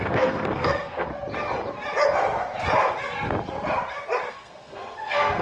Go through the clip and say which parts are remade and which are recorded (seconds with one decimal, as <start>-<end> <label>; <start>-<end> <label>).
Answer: 0.0-1.1 remade; 1.1-4.3 recorded; 4.3-5.4 remade